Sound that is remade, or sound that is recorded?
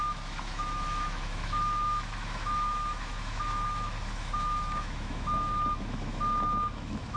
remade